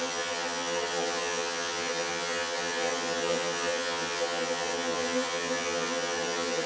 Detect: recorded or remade remade